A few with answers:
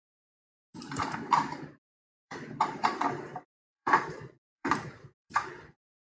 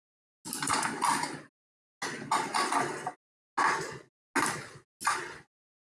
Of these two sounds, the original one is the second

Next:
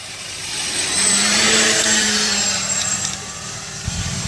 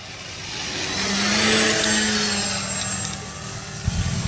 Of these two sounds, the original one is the second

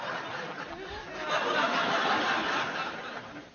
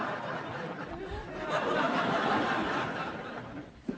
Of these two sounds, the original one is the first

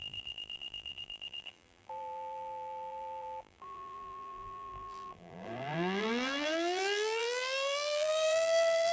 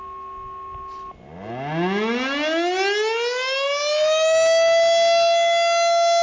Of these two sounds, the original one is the second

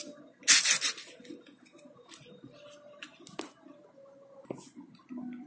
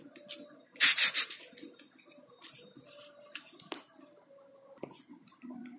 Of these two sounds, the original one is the first